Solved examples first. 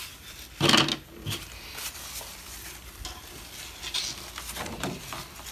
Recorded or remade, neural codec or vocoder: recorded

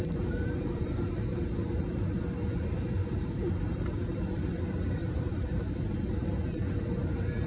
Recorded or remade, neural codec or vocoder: remade, vocoder, BigVGAN v2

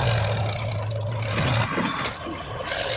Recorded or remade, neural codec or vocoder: recorded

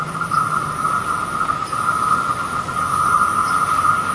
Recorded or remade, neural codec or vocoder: recorded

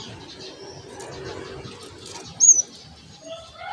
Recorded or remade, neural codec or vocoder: recorded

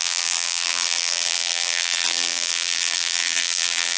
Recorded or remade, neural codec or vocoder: remade, vocoder, BigVGAN v2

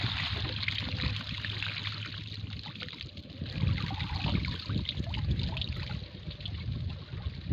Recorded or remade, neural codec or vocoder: recorded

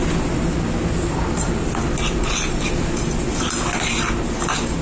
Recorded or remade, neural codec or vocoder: recorded